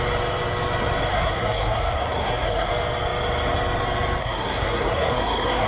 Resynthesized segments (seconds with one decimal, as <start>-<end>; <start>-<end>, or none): 1.1-2.7; 4.2-5.7